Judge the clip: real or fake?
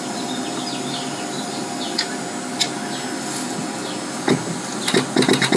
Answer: real